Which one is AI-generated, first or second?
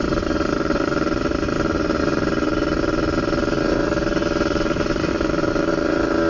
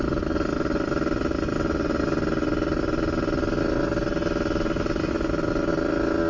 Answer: first